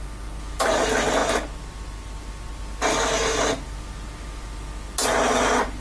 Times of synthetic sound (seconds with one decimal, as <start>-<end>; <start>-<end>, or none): none

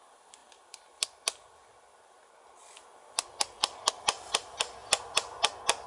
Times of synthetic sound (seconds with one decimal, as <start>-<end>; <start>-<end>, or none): none

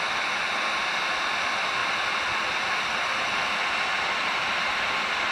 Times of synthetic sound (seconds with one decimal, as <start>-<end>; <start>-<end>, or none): none

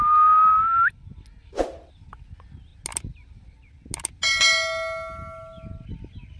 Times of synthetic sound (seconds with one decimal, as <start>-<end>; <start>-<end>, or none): none